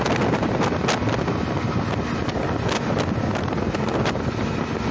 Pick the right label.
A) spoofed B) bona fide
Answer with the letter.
B